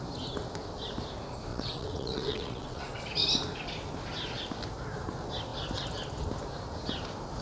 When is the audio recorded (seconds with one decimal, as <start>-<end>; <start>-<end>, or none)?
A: 0.0-1.5; 3.0-7.4